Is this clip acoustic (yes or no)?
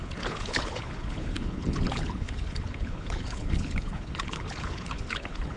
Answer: no